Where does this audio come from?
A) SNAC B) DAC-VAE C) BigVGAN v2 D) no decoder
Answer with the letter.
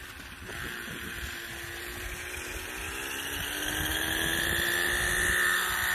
D